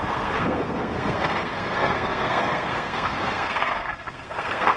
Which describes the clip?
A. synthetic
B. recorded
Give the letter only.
A